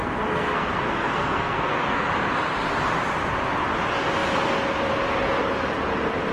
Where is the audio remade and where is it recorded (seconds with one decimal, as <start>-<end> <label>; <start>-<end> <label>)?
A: 0.0-2.1 remade; 2.1-6.3 recorded